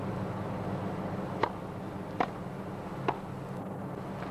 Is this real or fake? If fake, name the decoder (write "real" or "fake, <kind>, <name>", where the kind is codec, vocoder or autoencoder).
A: real